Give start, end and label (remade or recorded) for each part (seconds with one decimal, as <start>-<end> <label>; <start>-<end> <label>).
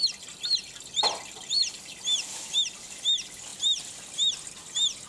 0.0-5.1 recorded